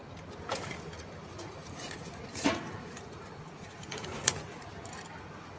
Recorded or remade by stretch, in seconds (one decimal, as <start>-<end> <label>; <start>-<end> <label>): 0.0-1.3 recorded; 1.3-4.7 remade; 4.7-5.6 recorded